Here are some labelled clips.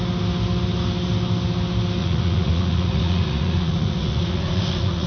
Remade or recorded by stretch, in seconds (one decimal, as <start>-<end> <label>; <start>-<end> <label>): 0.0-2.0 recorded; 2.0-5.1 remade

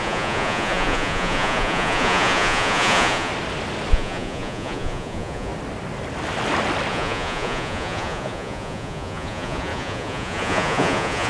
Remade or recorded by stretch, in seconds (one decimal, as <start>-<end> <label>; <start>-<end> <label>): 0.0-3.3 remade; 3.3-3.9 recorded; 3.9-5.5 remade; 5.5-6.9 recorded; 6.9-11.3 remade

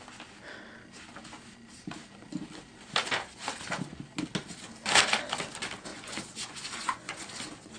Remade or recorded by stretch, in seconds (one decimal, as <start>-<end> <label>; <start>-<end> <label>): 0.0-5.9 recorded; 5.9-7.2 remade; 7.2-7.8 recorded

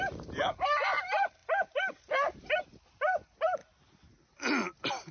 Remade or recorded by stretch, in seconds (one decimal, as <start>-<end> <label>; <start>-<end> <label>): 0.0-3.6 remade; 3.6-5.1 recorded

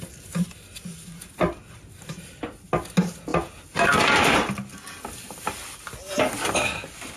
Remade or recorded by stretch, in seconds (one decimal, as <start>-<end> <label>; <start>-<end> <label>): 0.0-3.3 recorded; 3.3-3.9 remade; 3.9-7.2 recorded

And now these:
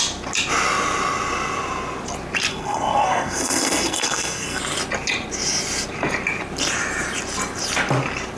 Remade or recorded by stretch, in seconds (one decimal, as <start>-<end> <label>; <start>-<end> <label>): 0.0-2.5 recorded; 2.5-4.6 remade; 4.6-8.4 recorded